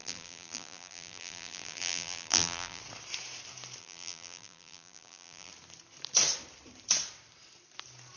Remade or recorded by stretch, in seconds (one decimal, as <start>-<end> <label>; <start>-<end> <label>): 0.0-2.8 remade; 2.8-3.8 recorded; 3.8-5.5 remade; 5.5-8.2 recorded